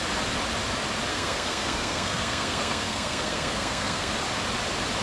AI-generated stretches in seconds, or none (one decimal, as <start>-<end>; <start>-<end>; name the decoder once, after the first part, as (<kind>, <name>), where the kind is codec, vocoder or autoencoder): 1.1-4.1 (codec, SNAC)